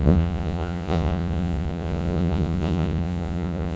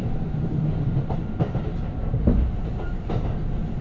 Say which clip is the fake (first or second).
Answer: first